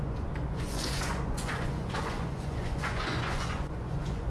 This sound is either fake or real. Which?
fake